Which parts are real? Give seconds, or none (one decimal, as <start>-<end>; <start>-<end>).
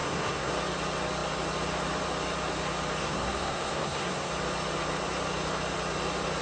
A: 0.5-3.0; 4.3-6.4